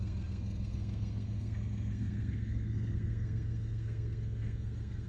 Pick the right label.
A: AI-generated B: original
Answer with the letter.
A